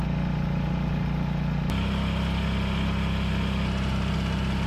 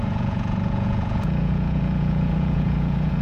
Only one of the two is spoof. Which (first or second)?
second